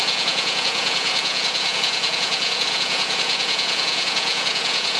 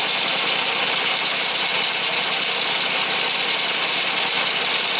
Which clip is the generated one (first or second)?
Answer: first